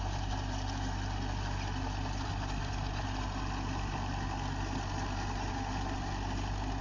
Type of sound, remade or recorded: recorded